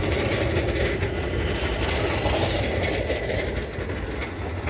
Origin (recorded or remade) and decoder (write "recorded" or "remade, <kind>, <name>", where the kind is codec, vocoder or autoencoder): recorded